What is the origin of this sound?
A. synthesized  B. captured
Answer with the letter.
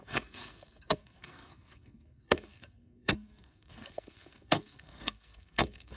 A